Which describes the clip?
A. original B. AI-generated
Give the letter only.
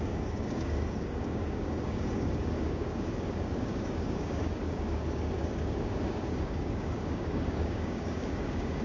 B